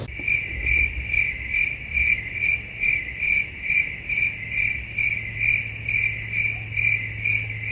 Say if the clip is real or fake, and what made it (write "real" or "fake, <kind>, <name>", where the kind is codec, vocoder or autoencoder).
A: real